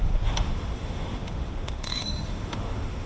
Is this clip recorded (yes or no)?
no